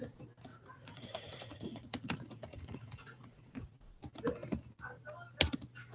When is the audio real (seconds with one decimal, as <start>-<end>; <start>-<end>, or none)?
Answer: 0.0-0.5; 4.0-5.9